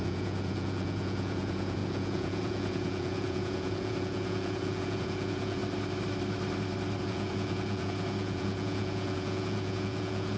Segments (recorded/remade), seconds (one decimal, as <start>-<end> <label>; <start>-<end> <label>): 0.0-5.6 remade; 5.6-7.0 recorded; 7.0-10.4 remade